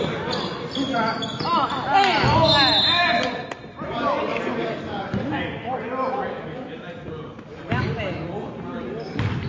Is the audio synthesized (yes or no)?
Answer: no